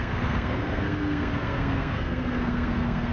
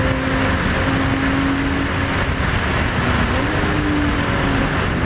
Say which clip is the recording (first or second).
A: second